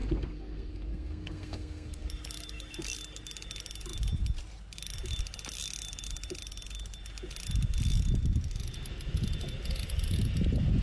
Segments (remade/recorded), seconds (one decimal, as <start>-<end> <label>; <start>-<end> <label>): 0.0-2.1 remade; 2.1-10.8 recorded